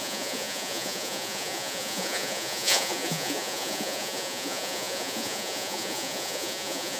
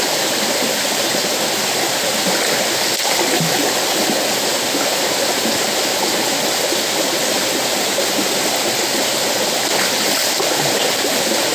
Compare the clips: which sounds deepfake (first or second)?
first